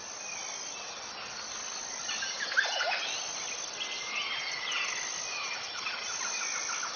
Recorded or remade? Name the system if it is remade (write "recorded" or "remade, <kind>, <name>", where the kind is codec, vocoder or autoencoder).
recorded